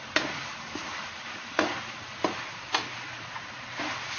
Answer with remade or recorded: remade